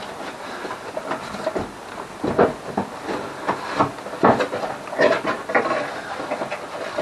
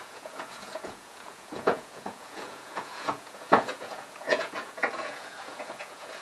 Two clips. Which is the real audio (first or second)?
first